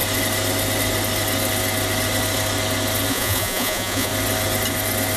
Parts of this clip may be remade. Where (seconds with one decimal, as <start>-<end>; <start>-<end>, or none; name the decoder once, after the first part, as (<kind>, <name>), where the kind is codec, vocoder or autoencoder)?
3.1-4.1 (vocoder, Vocos)